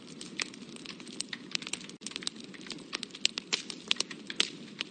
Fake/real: real